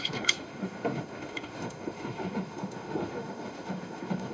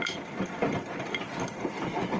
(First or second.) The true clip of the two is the second